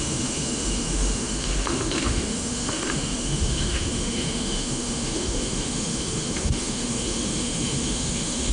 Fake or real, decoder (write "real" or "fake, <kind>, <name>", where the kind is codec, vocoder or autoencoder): fake, autoencoder, DAC-VAE